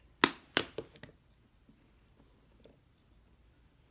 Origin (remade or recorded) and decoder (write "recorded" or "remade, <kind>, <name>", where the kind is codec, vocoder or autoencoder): recorded